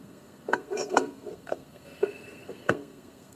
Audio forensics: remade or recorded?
remade